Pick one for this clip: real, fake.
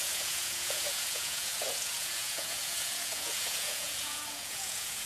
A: fake